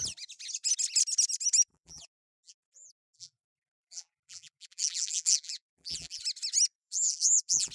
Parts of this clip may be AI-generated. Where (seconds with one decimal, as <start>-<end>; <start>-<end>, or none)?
1.7-6.2; 6.8-7.7